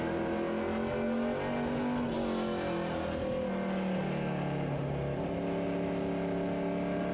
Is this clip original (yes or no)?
yes